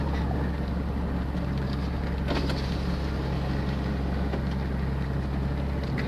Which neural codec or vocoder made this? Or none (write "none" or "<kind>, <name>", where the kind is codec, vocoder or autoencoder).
none